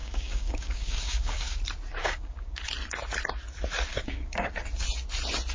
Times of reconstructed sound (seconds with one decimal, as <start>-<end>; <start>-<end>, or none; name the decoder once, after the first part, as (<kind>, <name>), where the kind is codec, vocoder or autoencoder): 0.0-1.6 (codec, DAC); 2.0-2.6; 3.9-4.5